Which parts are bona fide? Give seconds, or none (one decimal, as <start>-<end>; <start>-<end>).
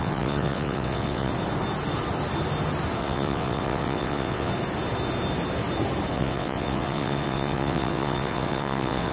1.3-3.0; 4.5-6.1